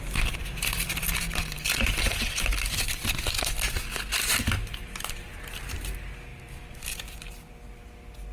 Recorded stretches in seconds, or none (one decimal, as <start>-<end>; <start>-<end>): 0.0-0.4; 1.1-6.3; 7.7-8.3